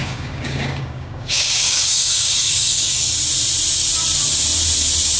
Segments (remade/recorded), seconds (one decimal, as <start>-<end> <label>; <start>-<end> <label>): 0.0-3.1 remade; 3.1-5.2 recorded

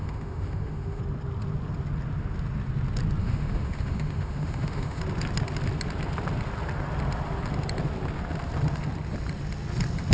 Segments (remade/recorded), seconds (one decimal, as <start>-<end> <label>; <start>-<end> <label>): 0.0-1.0 remade; 1.0-3.2 recorded; 3.2-5.0 remade; 5.0-10.1 recorded

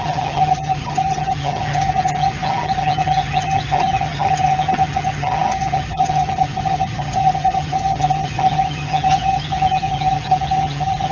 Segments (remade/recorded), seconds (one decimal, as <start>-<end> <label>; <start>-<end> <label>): 0.0-11.1 remade

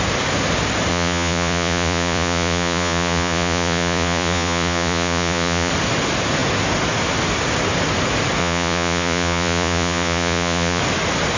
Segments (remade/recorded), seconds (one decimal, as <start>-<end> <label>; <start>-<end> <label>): 0.0-0.9 recorded; 0.9-5.7 remade; 5.7-8.4 recorded; 8.4-10.8 remade; 10.8-11.4 recorded